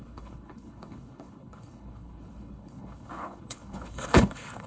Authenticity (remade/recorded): remade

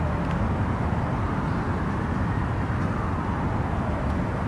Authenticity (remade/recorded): recorded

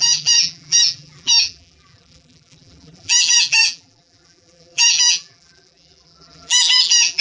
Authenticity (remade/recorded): remade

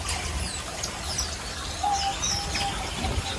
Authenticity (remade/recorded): recorded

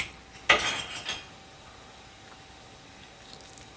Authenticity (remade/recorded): recorded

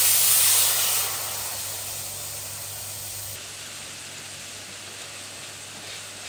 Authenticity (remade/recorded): recorded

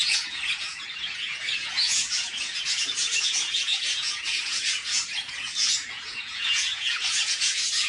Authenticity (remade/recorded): remade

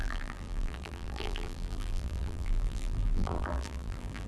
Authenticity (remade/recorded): remade